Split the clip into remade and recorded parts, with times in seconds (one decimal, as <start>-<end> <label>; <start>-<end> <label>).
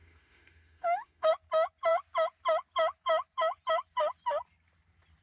0.0-1.3 remade; 1.3-5.2 recorded